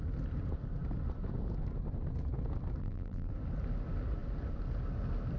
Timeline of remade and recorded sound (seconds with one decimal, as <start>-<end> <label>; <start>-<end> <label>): 0.0-2.8 recorded; 2.8-3.3 remade; 3.3-5.4 recorded